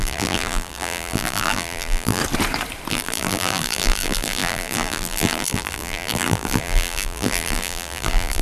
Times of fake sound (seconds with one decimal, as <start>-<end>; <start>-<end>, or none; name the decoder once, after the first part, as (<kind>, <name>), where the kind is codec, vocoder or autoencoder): 0.0-2.2 (vocoder, BigVGAN v2); 2.9-8.4